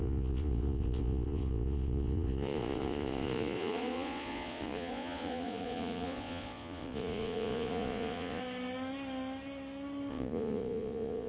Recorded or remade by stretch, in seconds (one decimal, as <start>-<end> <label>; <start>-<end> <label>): 0.0-8.4 remade; 8.4-10.1 recorded; 10.1-11.3 remade

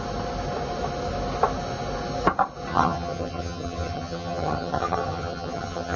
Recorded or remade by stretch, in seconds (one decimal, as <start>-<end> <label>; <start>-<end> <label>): 0.0-2.7 recorded; 2.7-6.0 remade

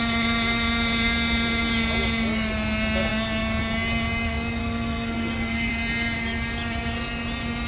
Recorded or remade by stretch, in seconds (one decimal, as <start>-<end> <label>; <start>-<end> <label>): 0.0-4.6 recorded; 4.6-5.7 remade; 5.7-7.7 recorded

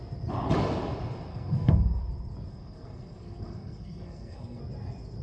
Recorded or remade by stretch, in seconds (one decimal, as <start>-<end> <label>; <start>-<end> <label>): 0.0-1.3 recorded; 1.3-2.0 remade; 2.0-2.5 recorded; 2.5-4.6 remade; 4.6-5.2 recorded

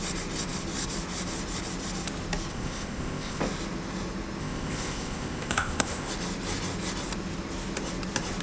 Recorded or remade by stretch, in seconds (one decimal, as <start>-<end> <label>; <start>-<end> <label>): 0.0-2.5 recorded; 2.5-3.4 remade; 3.4-4.4 recorded; 4.4-6.1 remade; 6.1-8.4 recorded